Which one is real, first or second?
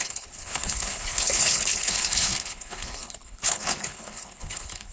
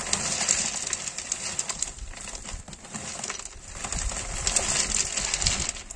second